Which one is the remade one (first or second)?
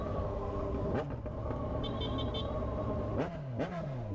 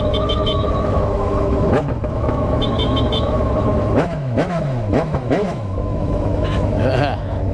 second